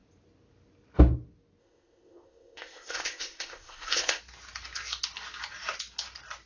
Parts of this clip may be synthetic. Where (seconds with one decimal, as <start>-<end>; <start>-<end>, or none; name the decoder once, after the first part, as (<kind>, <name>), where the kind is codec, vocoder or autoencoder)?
1.6-4.2 (codec, ZipCodec)